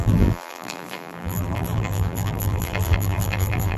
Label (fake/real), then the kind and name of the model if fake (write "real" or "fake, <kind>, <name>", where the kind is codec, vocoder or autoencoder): fake, vocoder, BigVGAN v2